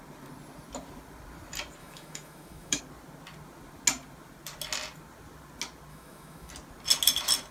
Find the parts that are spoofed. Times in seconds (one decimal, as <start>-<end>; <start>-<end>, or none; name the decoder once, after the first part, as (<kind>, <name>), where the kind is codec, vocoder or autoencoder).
1.8-2.8 (autoencoder, DAC-VAE); 5.9-6.5